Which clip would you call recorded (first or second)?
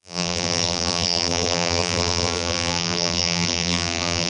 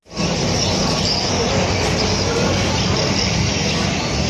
second